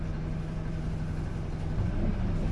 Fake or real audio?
real